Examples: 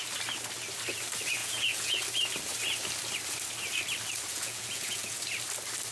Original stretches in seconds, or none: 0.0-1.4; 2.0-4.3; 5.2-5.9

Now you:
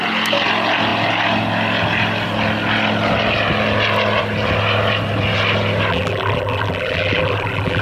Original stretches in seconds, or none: 0.0-5.9

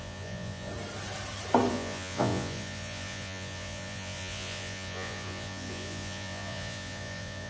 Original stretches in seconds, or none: 0.7-1.7